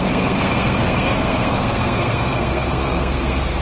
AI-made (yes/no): yes